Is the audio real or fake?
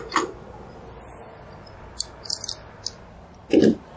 real